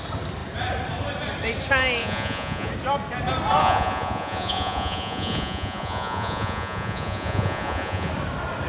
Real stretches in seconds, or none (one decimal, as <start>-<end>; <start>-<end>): 0.0-2.0; 2.7-3.6; 8.1-8.7